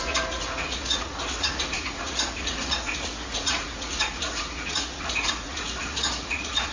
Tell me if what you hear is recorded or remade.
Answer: remade